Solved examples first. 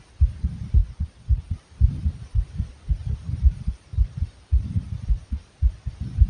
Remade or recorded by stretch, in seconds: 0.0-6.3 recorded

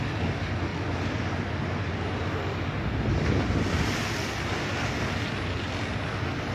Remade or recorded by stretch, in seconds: 0.0-6.5 recorded

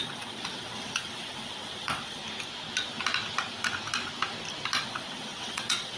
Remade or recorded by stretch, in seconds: 0.0-2.2 remade; 2.2-4.8 recorded; 4.8-6.0 remade

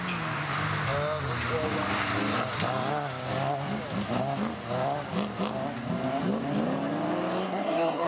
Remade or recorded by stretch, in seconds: 0.0-7.4 recorded; 7.4-8.1 remade